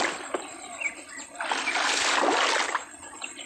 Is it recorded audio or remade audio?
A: recorded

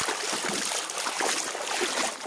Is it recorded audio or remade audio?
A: recorded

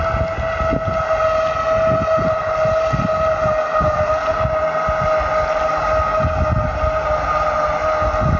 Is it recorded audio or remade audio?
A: recorded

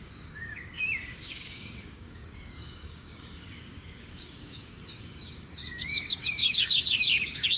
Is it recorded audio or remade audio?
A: remade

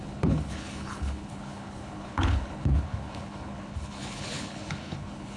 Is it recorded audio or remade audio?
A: remade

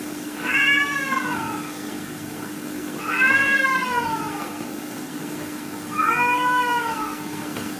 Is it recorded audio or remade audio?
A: remade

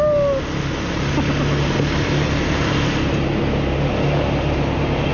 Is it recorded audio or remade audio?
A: recorded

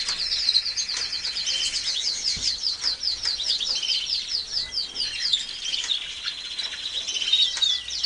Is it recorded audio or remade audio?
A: recorded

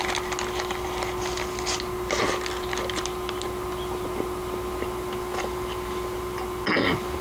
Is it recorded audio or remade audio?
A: recorded